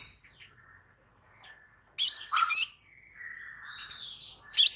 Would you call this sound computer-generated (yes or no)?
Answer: no